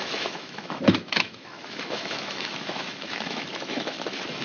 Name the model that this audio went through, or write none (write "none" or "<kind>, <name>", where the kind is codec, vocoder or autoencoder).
autoencoder, DAC-VAE